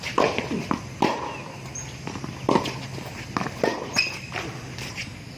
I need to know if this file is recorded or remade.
recorded